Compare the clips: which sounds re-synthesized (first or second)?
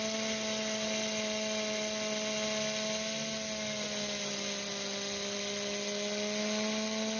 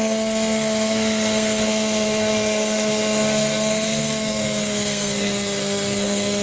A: second